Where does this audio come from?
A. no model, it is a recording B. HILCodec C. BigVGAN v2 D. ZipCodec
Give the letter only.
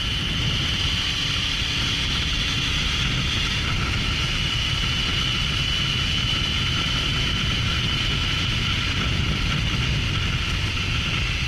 A